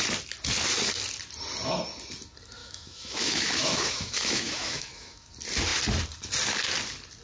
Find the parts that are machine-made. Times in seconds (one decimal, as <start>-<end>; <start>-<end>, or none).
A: 2.6-5.3